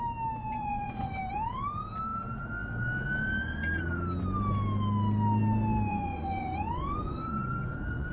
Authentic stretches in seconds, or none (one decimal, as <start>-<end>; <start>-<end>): 0.0-0.4; 1.2-5.9